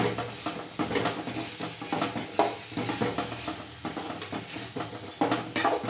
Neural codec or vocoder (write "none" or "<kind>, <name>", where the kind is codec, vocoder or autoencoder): none